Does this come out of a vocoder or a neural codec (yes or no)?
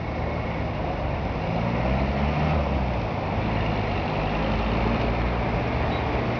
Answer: no